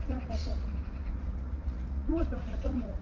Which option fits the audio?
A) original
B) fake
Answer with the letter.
B